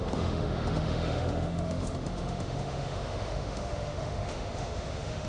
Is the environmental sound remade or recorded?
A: remade